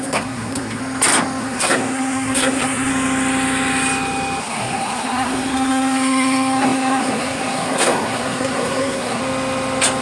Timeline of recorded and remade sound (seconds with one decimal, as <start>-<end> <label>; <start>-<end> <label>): 0.0-0.8 remade; 0.8-1.4 recorded; 1.4-2.9 remade; 2.9-4.4 recorded; 4.4-9.2 remade; 9.2-10.0 recorded